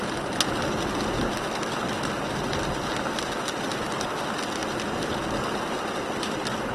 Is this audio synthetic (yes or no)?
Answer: no